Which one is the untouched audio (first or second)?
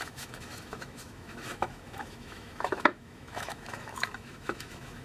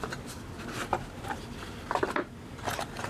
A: second